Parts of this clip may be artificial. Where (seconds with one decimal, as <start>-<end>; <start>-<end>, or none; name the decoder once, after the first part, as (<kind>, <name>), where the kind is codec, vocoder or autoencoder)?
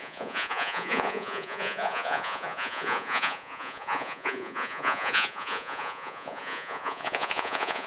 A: 0.0-7.9 (vocoder, Vocos)